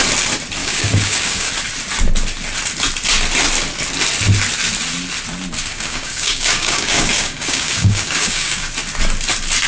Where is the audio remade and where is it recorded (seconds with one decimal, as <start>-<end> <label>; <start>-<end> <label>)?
0.0-0.6 recorded; 0.6-1.5 remade; 1.5-5.7 recorded; 5.7-8.7 remade; 8.7-9.7 recorded

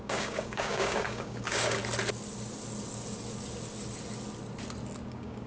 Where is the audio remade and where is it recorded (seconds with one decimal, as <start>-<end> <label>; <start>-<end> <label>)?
0.0-1.8 remade; 1.8-5.1 recorded; 5.1-5.5 remade

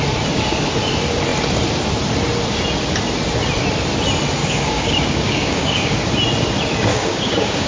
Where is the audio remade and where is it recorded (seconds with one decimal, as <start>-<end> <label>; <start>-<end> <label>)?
0.0-4.4 recorded; 4.4-6.0 remade; 6.0-6.9 recorded; 6.9-7.7 remade